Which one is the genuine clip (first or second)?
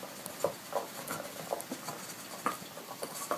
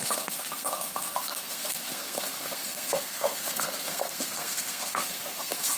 first